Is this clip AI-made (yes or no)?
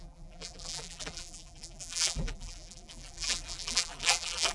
yes